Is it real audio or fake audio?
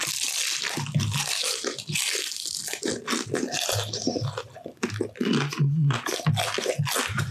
real